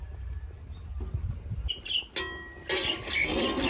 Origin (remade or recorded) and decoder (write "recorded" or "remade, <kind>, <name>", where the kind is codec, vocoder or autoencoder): recorded